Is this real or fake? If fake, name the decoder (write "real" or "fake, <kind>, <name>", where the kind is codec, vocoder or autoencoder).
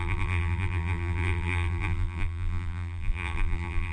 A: fake, vocoder, BigVGAN v2